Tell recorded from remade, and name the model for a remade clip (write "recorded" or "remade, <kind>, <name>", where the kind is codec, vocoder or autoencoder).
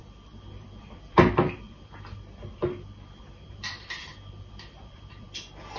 remade, vocoder, BigVGAN v2